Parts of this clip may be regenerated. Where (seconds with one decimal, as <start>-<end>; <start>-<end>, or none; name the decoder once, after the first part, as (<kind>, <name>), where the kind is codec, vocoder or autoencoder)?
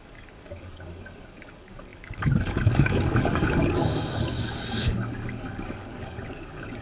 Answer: 0.0-6.8 (codec, DAC)